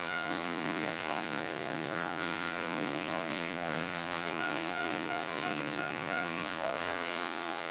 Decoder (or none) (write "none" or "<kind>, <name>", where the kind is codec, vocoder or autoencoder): vocoder, Vocos